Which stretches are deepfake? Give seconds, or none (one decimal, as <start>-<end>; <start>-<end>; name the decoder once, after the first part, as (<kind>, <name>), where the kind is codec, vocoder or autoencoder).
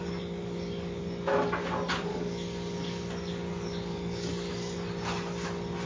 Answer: 0.0-1.0 (codec, DAC); 2.1-4.5